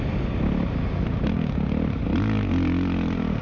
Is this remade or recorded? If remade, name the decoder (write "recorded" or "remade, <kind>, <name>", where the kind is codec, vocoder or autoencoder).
recorded